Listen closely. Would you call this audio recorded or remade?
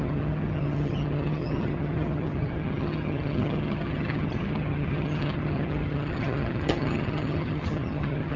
remade